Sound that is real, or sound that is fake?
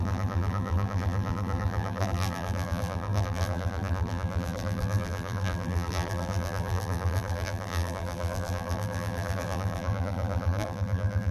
fake